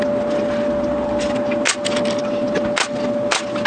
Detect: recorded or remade recorded